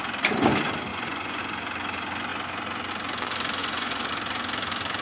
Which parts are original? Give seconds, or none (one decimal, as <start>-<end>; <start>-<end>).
0.0-0.9; 1.4-3.6; 4.1-5.0